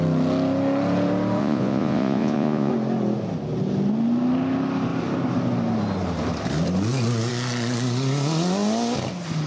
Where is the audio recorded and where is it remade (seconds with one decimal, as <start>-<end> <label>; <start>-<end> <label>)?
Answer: 0.0-1.4 recorded; 1.4-2.7 remade; 2.7-9.5 recorded

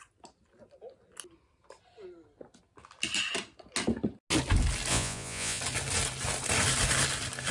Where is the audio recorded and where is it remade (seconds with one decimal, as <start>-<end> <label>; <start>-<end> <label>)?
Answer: 0.0-4.9 recorded; 4.9-5.6 remade; 5.6-7.5 recorded

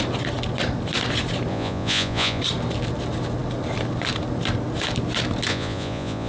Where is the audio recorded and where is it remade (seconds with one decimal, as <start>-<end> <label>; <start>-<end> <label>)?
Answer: 0.0-1.5 recorded; 1.5-2.4 remade; 2.4-5.5 recorded; 5.5-6.3 remade

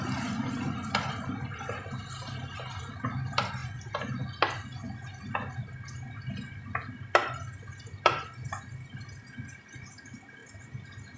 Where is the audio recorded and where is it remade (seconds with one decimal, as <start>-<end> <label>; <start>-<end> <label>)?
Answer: 0.0-11.2 recorded